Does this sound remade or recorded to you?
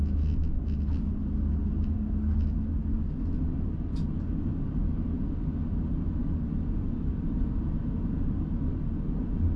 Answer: recorded